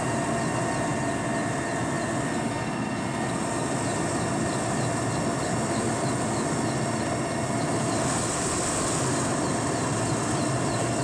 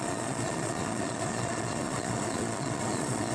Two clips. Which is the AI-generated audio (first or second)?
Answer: second